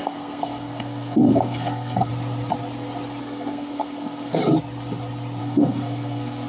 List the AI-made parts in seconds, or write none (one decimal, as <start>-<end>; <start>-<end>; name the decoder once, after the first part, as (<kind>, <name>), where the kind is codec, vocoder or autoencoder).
0.0-2.1 (codec, SNAC); 3.2-4.4; 5.4-6.5